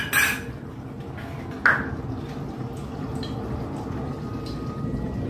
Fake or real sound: real